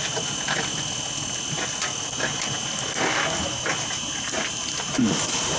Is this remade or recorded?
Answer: recorded